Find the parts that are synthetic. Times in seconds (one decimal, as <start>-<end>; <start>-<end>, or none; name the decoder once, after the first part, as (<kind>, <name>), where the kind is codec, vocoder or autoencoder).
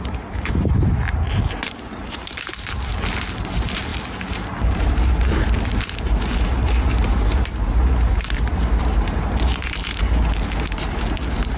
0.0-11.6 (vocoder, BigVGAN v2)